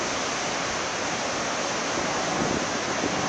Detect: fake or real real